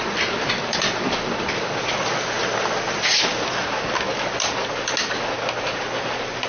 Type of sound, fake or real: real